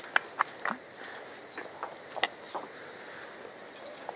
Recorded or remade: recorded